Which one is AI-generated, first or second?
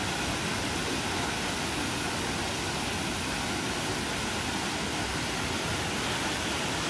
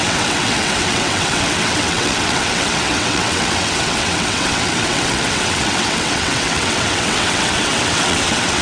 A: second